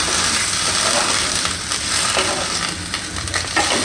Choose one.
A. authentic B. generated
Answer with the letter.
A